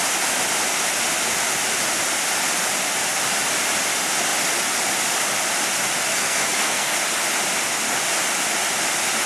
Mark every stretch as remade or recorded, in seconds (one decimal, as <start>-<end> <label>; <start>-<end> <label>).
0.0-6.1 recorded; 6.1-7.0 remade; 7.0-9.3 recorded